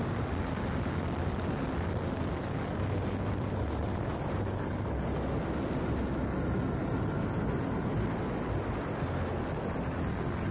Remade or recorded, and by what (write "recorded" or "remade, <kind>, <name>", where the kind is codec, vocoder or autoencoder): recorded